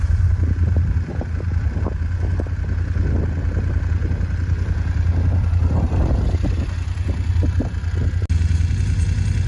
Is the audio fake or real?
real